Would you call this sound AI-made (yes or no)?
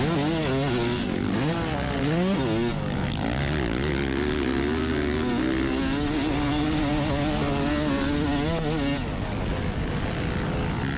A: no